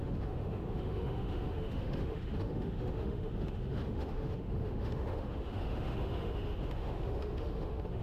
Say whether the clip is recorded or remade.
remade